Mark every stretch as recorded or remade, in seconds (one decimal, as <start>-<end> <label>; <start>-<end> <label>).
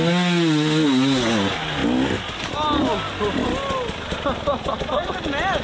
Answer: 0.0-5.6 recorded